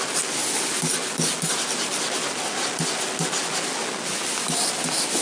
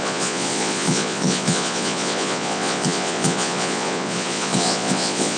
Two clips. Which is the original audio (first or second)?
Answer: first